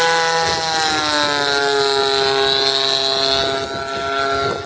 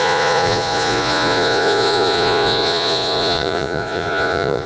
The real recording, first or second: first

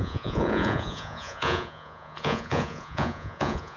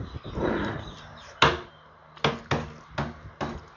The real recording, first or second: second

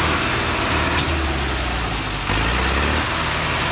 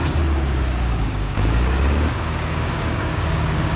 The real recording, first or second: first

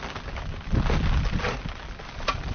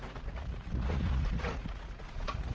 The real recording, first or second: first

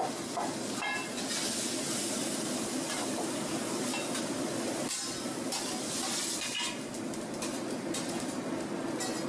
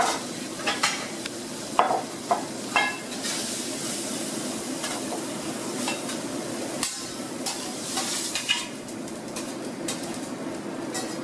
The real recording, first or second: first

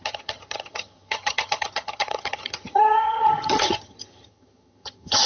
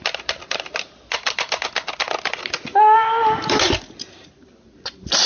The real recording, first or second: second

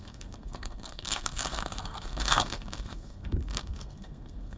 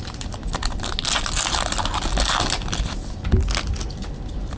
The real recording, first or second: second